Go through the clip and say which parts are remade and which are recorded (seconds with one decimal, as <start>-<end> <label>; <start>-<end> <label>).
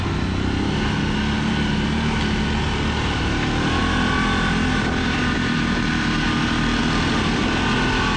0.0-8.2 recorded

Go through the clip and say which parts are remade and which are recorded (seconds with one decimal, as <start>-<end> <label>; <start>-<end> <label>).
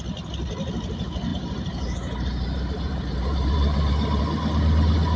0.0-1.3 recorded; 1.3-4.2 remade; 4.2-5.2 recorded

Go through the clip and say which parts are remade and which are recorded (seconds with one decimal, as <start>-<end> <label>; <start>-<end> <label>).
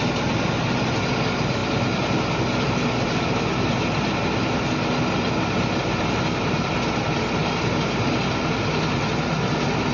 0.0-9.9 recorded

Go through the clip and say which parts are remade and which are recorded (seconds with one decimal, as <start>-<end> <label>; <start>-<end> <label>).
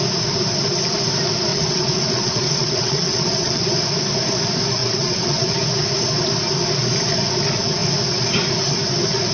0.0-1.5 recorded; 1.5-3.6 remade; 3.6-4.8 recorded; 4.8-5.5 remade; 5.5-9.3 recorded